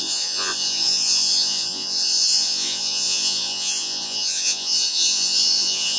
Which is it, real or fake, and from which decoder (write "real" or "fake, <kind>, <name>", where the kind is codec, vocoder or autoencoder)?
fake, vocoder, Vocos